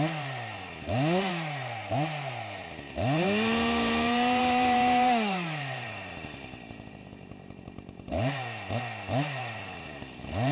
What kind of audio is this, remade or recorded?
remade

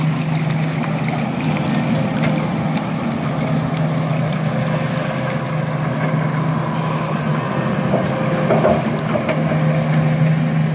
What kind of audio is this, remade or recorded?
recorded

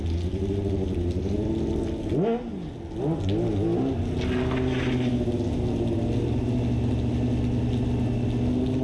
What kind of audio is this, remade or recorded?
recorded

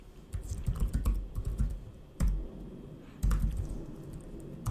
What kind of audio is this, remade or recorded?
remade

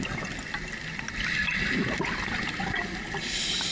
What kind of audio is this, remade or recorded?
recorded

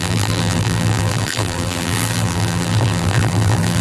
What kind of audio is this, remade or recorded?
remade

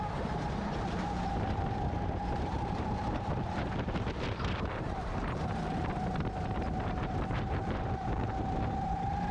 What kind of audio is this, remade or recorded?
remade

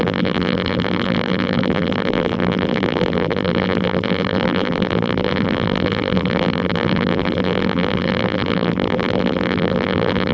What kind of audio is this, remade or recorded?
remade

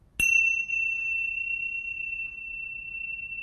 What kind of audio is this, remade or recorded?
recorded